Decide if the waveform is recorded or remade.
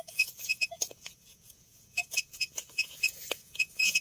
remade